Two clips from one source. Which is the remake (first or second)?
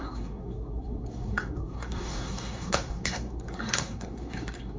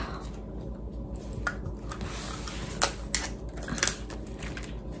first